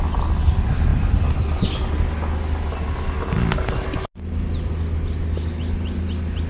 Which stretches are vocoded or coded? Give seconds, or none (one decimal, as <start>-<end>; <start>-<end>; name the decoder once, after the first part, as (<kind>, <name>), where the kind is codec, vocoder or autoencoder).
none